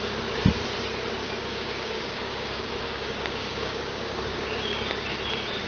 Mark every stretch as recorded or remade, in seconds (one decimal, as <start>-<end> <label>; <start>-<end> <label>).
0.0-1.2 recorded; 1.2-4.6 remade; 4.6-5.7 recorded

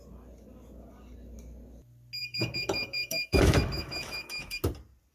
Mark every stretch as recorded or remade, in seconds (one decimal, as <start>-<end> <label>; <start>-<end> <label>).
0.0-2.2 recorded; 2.2-4.6 remade; 4.6-5.1 recorded

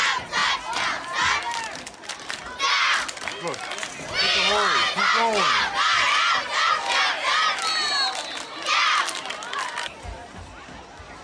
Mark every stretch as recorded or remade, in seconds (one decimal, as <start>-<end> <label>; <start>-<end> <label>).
0.0-11.2 recorded